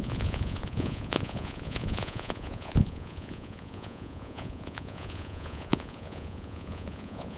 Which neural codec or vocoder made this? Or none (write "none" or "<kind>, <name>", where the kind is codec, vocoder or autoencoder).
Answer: vocoder, Vocos